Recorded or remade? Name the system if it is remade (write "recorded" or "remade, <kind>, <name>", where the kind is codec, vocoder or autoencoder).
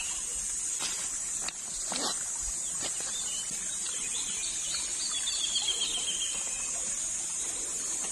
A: recorded